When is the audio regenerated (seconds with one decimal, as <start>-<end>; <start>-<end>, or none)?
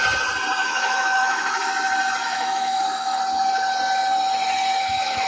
0.6-1.7; 2.2-3.2; 4.8-5.3